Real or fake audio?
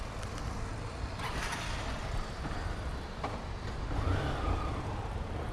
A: fake